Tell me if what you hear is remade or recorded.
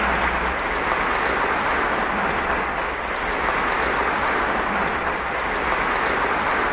recorded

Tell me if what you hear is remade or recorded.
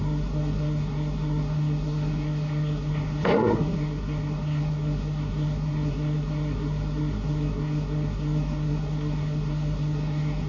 remade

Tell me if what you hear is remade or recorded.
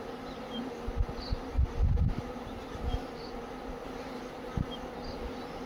recorded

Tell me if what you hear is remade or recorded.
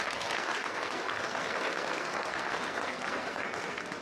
remade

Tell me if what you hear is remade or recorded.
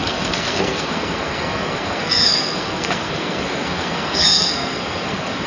remade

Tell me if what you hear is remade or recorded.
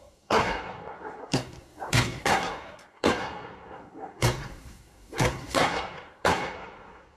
remade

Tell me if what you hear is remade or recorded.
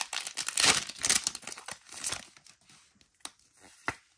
recorded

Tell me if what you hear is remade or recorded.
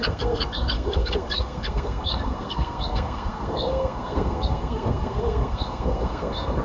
remade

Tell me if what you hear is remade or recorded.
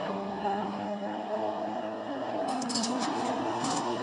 remade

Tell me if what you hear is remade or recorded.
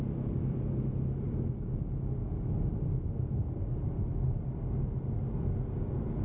recorded